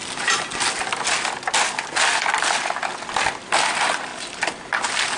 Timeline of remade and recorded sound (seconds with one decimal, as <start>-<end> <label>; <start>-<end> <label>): 0.0-5.2 recorded